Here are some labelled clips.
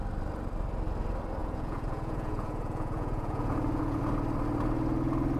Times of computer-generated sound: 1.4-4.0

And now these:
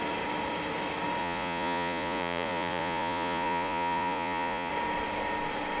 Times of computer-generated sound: 1.2-4.7

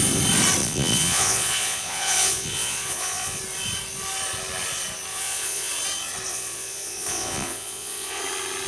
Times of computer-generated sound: 0.6-3.4; 5.1-5.7; 6.3-8.2

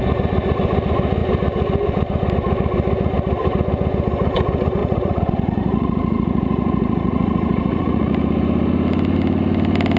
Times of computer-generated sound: 4.8-8.1

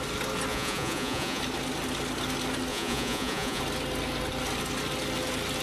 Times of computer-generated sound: 0.5-1.4; 2.7-3.6

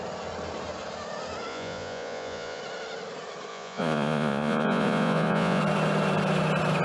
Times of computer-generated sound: 1.5-2.6; 3.5-5.6

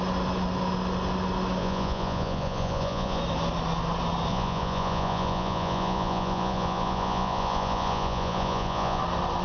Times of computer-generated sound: 1.6-3.2; 4.3-9.0